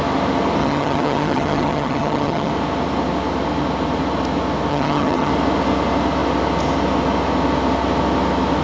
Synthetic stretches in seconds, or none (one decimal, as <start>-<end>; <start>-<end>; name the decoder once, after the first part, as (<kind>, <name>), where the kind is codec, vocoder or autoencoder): 0.6-2.5 (vocoder, HiFi-GAN); 4.7-5.3